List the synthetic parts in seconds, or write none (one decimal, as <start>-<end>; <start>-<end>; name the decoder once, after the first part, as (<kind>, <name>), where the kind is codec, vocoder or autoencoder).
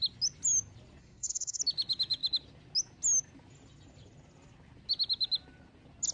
1.0-1.6 (codec, SNAC)